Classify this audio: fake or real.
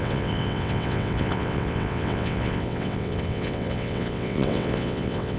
fake